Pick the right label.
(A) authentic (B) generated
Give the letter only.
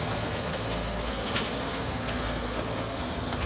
B